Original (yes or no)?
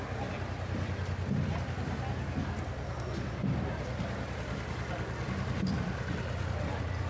yes